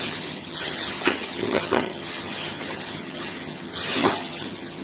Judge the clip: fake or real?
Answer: fake